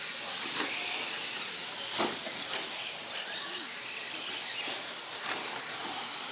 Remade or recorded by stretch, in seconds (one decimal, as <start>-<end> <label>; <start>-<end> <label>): 0.0-2.2 recorded; 2.2-3.1 remade; 3.1-6.3 recorded